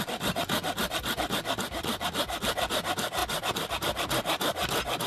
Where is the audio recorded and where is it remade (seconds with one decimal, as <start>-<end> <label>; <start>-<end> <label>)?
0.0-5.1 recorded

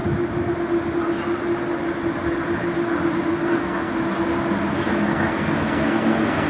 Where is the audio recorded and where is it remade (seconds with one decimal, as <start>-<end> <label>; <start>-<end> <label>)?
0.0-3.3 recorded; 3.3-3.9 remade; 3.9-4.7 recorded; 4.7-6.5 remade